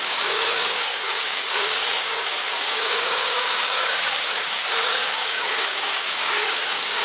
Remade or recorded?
remade